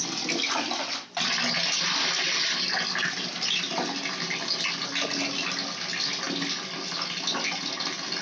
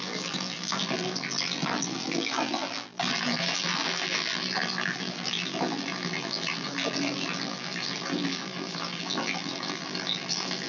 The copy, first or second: second